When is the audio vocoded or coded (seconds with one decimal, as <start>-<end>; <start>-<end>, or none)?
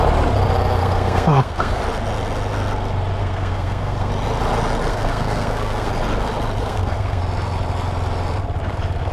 0.8-1.8; 3.2-4.1; 4.9-5.9; 6.6-7.2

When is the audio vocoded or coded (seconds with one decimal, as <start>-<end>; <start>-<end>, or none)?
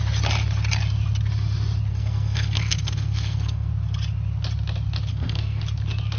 1.9-3.7; 5.1-5.6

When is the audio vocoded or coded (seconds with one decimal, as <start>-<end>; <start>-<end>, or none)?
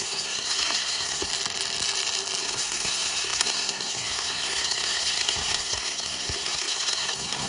0.0-1.3; 2.4-7.5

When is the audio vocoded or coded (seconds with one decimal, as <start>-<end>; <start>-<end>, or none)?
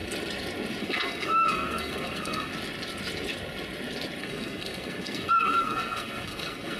0.8-2.5; 4.2-6.8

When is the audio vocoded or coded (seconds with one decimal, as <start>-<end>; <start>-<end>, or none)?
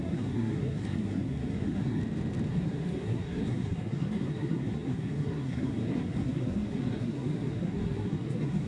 0.0-2.0; 2.5-8.7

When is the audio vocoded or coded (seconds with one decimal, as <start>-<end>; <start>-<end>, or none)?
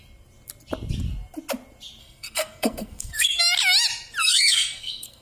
2.0-3.4; 4.2-5.2